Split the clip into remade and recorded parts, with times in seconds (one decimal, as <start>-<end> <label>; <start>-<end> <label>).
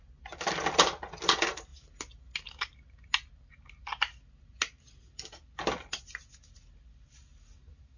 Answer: 0.0-8.0 recorded